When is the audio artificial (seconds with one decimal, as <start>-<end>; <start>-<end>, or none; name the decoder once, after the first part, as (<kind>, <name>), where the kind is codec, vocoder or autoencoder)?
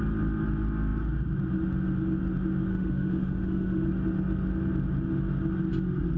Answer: 2.7-3.9 (autoencoder, DAC-VAE)